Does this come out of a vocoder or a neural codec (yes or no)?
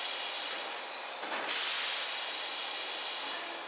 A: no